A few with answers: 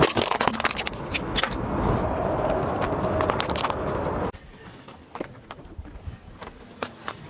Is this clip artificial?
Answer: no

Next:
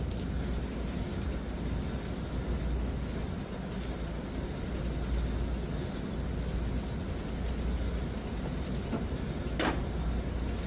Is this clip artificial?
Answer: no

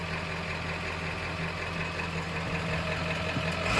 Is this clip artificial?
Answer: no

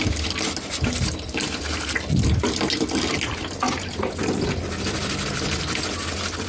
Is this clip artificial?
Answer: no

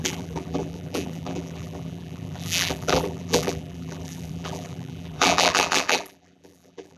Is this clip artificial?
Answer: yes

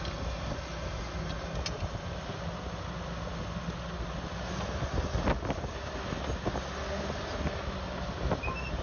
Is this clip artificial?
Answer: no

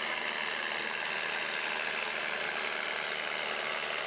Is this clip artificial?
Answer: no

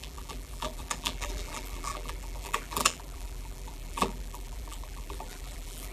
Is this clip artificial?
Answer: yes